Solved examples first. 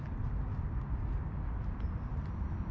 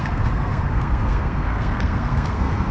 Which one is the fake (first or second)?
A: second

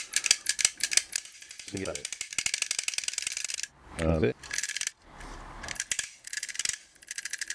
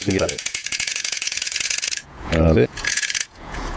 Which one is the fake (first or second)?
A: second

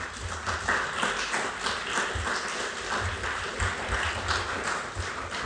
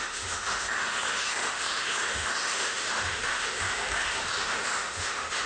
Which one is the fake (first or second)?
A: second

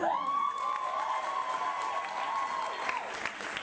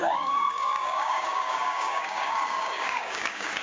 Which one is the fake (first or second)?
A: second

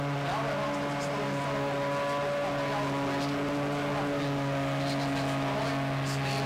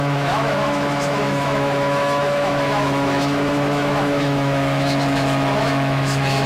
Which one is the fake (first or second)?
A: second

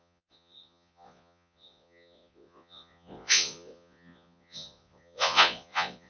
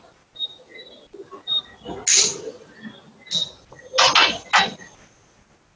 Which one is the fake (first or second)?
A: first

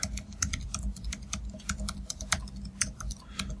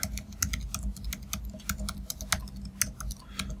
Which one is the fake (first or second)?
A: first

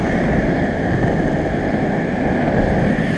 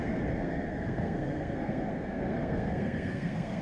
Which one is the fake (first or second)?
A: second